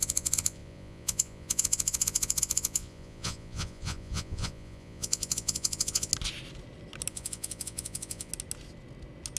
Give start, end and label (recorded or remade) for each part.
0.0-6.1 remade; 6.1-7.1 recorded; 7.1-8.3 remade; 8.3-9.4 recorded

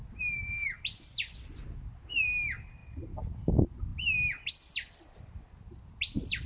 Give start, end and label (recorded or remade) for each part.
0.0-6.5 recorded